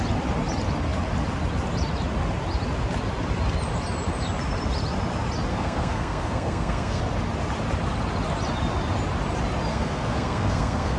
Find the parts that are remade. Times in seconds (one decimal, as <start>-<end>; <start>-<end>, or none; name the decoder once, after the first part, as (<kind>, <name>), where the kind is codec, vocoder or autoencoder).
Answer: 5.5-7.0 (codec, SNAC); 9.7-11.0